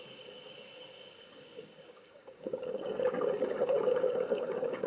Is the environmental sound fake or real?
fake